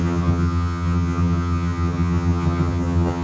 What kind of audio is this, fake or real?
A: fake